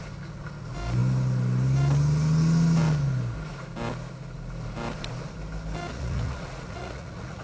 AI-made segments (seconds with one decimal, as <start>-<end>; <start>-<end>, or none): 5.9-7.4